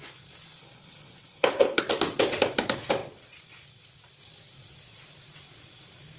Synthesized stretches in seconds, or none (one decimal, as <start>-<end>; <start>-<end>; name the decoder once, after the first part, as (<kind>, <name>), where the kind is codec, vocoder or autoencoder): 0.6-1.8 (codec, HILCodec)